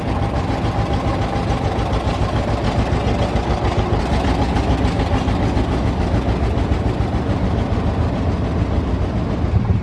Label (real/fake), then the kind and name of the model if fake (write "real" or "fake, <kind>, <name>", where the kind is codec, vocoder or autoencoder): real